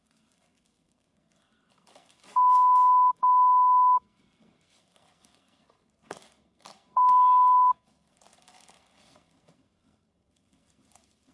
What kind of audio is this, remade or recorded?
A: remade